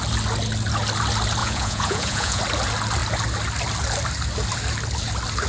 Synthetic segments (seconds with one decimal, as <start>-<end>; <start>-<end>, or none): 1.4-2.4